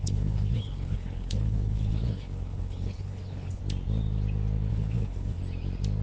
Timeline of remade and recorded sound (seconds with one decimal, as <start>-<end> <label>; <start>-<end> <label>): 0.0-3.6 remade; 3.6-4.7 recorded; 4.7-5.4 remade; 5.4-6.0 recorded